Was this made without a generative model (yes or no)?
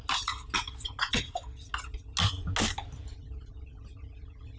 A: yes